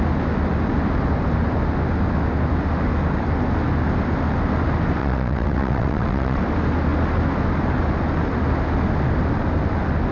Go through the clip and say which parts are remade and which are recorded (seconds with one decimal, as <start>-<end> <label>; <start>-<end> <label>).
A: 0.0-5.0 recorded; 5.0-6.4 remade; 6.4-10.1 recorded